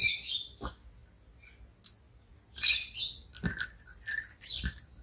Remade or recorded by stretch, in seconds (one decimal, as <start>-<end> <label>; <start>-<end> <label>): 0.0-2.3 recorded; 2.3-4.5 remade; 4.5-5.0 recorded